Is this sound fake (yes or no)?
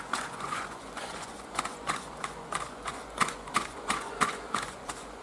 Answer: yes